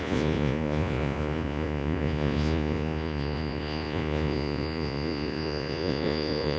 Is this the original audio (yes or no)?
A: no